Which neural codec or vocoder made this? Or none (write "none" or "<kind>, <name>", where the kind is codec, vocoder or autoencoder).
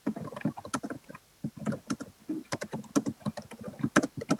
none